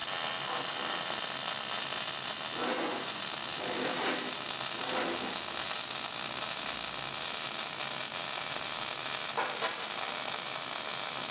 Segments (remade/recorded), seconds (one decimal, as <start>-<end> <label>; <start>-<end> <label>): 0.0-2.7 recorded; 2.7-3.2 remade; 3.2-11.3 recorded